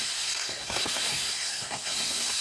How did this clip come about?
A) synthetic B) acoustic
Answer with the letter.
A